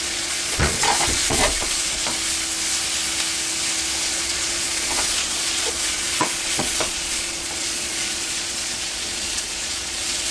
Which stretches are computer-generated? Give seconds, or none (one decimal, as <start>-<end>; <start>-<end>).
0.0-2.1; 4.0-10.3